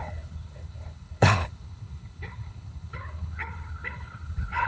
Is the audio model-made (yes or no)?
yes